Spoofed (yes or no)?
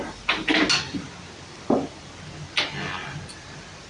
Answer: no